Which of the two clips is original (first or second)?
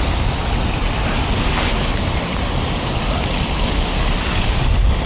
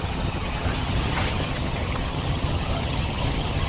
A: first